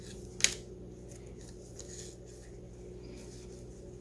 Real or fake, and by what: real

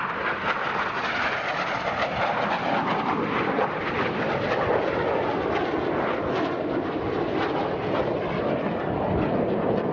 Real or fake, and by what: real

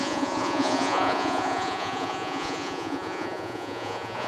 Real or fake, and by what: fake, vocoder, Vocos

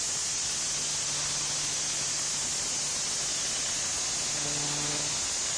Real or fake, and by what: real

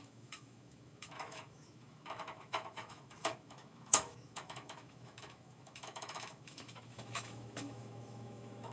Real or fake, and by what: fake, autoencoder, DAC-VAE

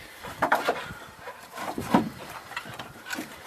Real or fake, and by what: fake, vocoder, BigVGAN v2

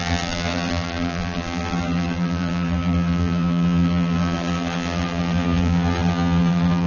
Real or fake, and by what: fake, vocoder, BigVGAN v2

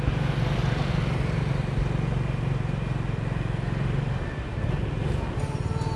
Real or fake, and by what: real